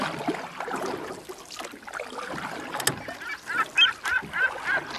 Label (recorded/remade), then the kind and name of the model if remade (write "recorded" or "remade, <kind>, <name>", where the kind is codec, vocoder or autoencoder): recorded